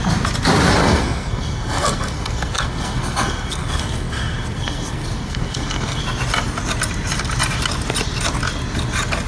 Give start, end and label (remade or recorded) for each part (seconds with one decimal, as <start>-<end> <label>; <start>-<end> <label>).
0.0-0.8 recorded; 0.8-6.0 remade; 6.0-9.3 recorded